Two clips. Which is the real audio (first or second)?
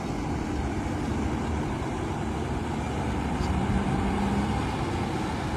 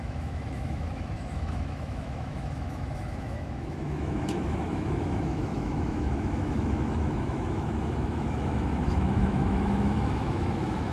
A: first